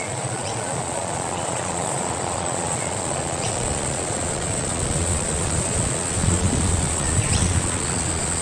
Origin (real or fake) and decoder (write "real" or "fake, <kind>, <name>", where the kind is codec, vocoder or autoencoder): fake, vocoder, Vocos